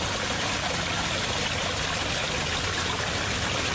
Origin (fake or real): real